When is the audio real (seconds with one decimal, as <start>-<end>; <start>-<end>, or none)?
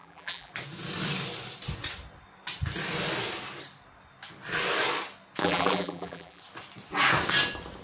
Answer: 0.5-5.4; 6.4-7.8